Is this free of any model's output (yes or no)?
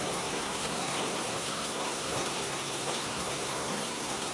no